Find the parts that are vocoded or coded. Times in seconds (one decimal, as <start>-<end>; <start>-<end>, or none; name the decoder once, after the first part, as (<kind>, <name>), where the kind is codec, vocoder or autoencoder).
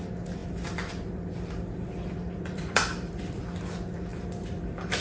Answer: 0.4-3.4 (vocoder, BigVGAN v2); 4.1-5.0